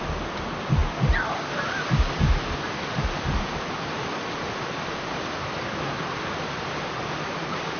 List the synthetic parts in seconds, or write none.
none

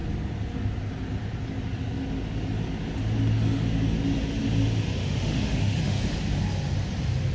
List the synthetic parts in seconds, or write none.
5.0-6.0 (autoencoder, DAC-VAE)

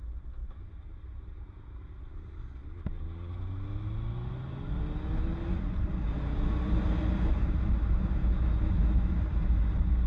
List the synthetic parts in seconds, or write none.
8.2-9.1 (autoencoder, DAC-VAE)